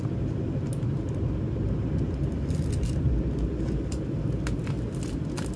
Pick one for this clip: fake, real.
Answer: real